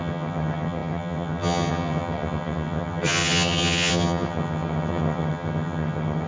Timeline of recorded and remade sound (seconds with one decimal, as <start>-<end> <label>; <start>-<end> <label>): 0.0-6.3 remade